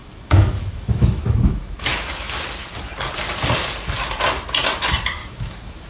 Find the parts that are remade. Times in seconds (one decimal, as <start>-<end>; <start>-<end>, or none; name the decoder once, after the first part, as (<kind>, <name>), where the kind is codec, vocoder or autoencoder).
0.0-2.4 (autoencoder, DAC-VAE); 5.2-5.9